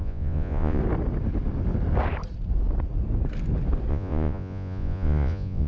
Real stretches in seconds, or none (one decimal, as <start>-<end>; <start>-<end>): 0.8-3.9